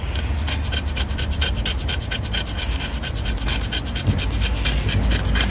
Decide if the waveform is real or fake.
real